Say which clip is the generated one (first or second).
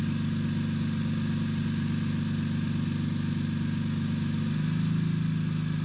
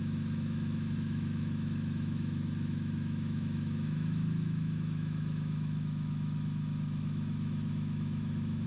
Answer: second